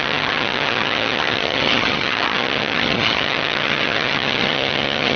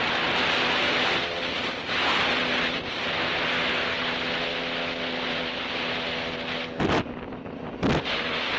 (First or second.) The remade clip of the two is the first